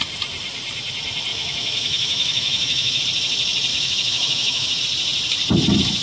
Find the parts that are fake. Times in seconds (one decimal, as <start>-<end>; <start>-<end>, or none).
1.3-3.0; 3.7-4.8